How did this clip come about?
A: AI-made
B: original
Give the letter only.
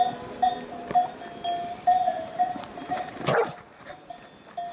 B